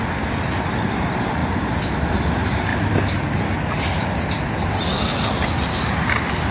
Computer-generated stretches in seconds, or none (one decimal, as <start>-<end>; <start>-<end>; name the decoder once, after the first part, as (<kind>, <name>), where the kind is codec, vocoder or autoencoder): none